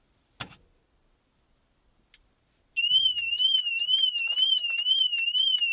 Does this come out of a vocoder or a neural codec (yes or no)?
no